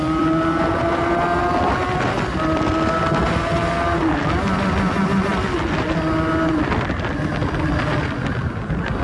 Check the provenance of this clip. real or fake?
real